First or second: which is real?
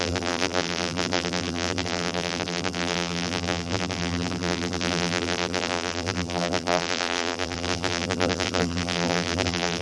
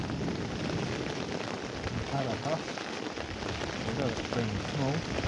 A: second